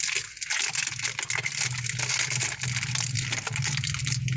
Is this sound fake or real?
real